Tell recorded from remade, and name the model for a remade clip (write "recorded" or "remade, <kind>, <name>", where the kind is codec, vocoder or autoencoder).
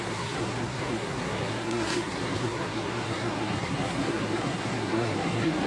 remade, codec, SNAC